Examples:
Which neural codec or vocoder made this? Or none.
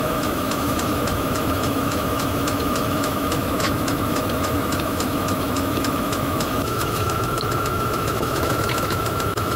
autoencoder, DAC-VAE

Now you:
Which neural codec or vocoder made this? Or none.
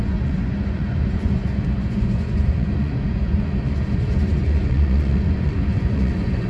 vocoder, Vocos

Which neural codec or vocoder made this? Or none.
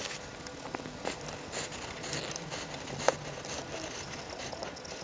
none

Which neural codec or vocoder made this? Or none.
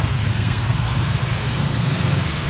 codec, SNAC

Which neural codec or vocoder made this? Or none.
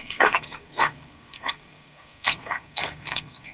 codec, SNAC